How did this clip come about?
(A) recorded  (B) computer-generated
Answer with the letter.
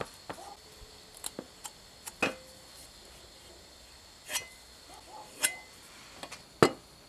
A